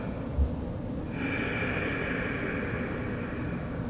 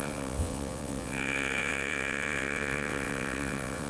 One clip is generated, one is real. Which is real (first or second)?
first